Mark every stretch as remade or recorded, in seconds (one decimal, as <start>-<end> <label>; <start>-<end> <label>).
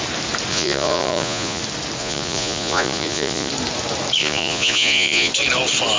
0.0-0.5 recorded; 0.5-1.6 remade; 1.6-2.0 recorded; 2.0-3.5 remade; 3.5-4.2 recorded; 4.2-5.3 remade; 5.3-6.0 recorded